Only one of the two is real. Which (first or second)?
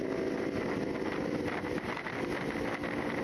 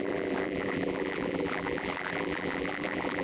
first